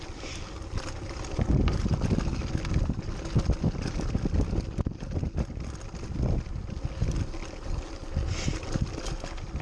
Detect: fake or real real